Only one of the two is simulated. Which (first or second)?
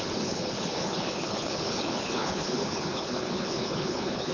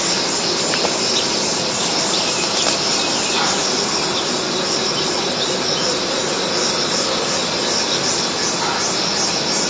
first